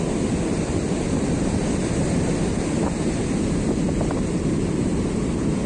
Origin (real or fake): real